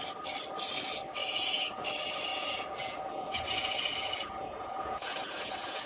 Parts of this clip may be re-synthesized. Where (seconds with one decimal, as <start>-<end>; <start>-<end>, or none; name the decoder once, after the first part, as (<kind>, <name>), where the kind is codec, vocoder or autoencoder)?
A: 1.2-1.8 (vocoder, Vocos); 2.3-5.9